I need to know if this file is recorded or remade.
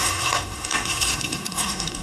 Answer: remade